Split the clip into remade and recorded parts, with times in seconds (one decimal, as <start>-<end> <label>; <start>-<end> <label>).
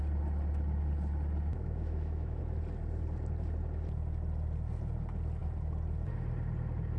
0.0-1.5 recorded; 1.5-2.4 remade; 2.4-7.0 recorded